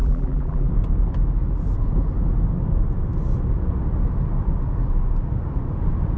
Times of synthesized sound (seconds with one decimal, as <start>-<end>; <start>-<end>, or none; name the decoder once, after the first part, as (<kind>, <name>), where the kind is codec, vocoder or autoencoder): 0.0-0.7 (vocoder, BigVGAN v2)